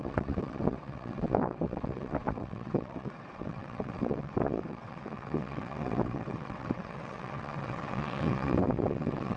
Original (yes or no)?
no